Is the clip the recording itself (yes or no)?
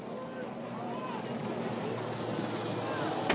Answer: yes